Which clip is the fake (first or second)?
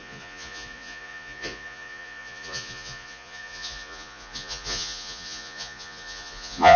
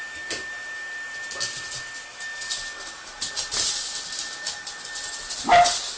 first